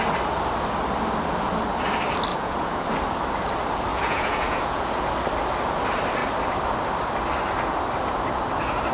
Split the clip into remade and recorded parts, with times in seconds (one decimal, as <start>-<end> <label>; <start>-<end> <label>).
0.0-2.3 recorded; 2.3-2.9 remade; 2.9-3.9 recorded; 3.9-5.1 remade; 5.1-8.9 recorded